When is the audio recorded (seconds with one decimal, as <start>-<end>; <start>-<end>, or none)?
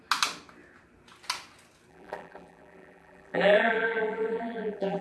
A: 0.0-1.9